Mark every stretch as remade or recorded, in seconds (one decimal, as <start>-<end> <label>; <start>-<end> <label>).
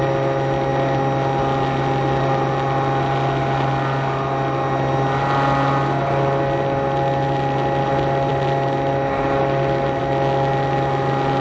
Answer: 0.0-11.4 recorded